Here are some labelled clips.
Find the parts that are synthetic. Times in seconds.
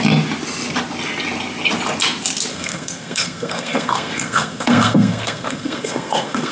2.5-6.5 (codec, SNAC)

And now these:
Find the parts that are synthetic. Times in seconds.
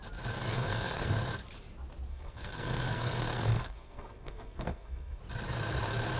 0.5-1.1 (codec, SNAC); 2.1-5.2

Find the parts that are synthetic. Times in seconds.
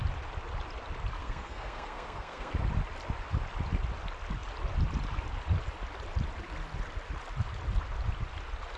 1.2-2.5 (codec, SNAC)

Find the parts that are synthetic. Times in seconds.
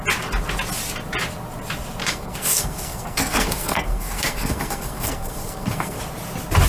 2.0-6.0 (codec, SNAC)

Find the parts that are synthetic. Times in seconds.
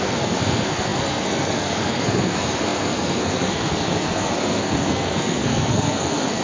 0.0-6.4 (codec, SNAC)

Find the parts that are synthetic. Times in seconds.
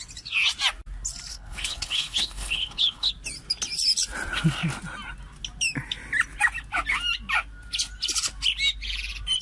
1.3-3.1 (codec, HILCodec)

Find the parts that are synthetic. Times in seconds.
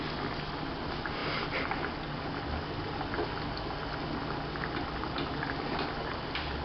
none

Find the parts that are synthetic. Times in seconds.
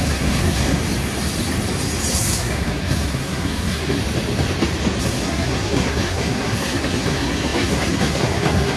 0.0-0.8 (codec, SNAC); 2.1-4.0; 5.0-8.8